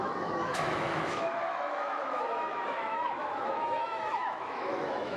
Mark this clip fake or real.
fake